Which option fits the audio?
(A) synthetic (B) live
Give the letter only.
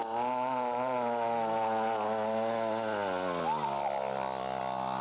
B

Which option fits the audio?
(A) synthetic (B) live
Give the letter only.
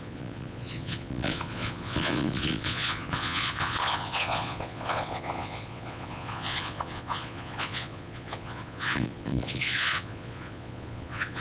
A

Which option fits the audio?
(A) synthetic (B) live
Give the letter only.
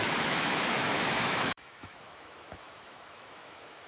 A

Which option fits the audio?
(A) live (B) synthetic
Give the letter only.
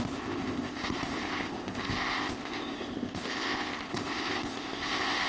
B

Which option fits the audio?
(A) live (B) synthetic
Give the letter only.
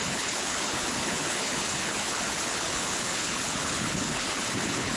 B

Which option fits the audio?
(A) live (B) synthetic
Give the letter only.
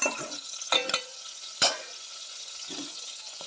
B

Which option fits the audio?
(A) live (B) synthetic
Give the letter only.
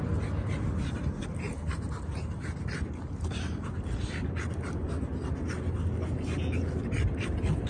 A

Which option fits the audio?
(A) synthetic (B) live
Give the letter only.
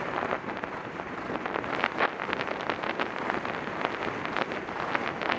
B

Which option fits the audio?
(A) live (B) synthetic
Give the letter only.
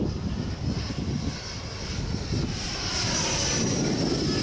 B